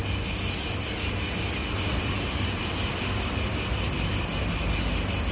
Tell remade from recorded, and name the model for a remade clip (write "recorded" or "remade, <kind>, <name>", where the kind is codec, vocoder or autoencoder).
recorded